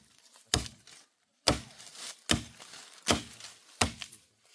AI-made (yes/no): no